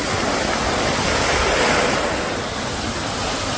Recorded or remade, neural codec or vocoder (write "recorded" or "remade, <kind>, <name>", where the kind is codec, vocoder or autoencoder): recorded